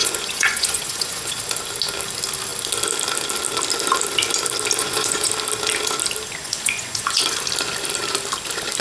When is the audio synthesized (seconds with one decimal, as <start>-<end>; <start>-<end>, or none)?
0.0-1.4; 4.8-5.3; 6.4-7.2

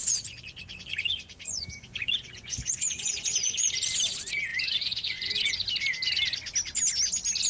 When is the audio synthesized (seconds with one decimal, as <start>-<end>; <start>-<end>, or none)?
0.0-3.7; 4.5-5.5

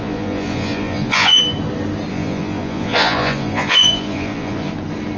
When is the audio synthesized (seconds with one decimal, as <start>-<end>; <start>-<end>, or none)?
0.0-1.4; 2.1-4.7

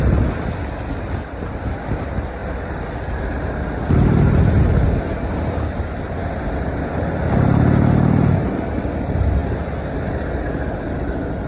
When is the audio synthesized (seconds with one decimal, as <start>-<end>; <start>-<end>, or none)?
none

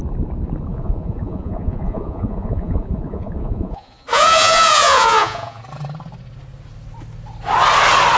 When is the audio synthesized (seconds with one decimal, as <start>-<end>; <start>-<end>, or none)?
0.7-5.6

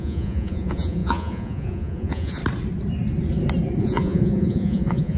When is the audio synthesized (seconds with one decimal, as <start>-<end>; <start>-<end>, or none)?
0.0-2.4; 3.8-5.2

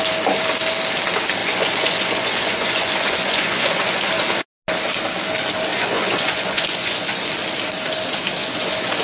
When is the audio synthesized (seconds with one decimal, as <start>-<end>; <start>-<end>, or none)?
1.4-4.1; 5.7-7.3; 8.4-9.0

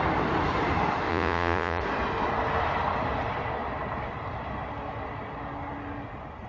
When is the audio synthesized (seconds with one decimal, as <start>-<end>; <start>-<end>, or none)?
1.1-1.8